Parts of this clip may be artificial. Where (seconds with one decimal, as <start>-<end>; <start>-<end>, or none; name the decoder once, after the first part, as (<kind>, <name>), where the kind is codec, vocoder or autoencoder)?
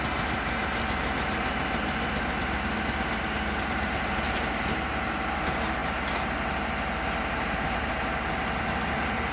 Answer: none